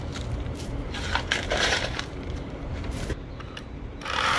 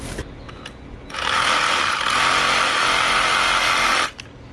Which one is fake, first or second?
first